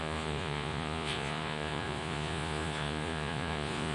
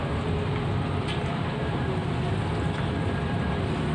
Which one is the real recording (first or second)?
second